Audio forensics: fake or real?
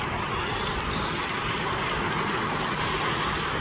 real